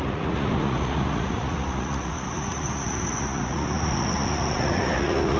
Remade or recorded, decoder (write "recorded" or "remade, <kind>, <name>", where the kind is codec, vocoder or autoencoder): remade, vocoder, Vocos